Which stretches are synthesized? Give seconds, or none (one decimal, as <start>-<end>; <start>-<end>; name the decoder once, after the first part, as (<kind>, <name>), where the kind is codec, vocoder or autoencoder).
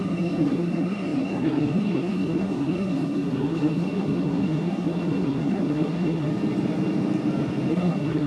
0.0-6.3 (codec, SNAC); 7.7-8.3